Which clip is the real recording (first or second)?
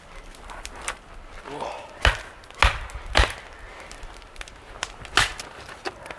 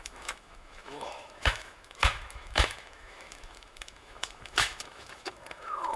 first